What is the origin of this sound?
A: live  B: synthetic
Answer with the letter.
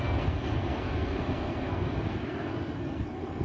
B